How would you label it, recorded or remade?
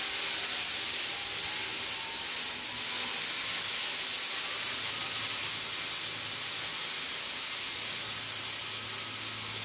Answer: recorded